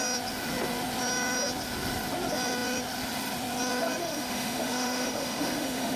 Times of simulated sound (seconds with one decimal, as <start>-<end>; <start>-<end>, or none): 4.0-6.0